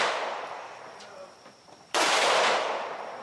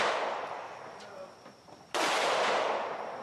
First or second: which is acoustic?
second